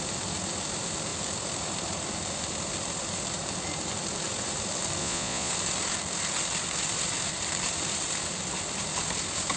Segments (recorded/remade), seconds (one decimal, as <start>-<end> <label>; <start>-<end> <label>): 0.0-5.0 recorded; 5.0-5.5 remade; 5.5-9.6 recorded